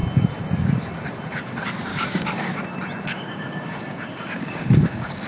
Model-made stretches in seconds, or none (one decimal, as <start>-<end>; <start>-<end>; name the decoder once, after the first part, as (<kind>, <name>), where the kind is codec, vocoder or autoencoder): 1.9-2.6 (codec, DAC); 3.1-5.3